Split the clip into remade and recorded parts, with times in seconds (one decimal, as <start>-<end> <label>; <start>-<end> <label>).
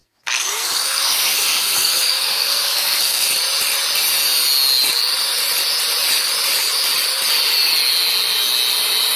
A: 0.0-3.3 remade; 3.3-9.2 recorded